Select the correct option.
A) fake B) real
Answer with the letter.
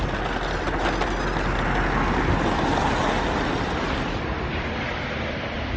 B